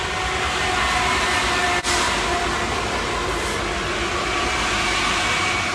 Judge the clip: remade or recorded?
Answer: recorded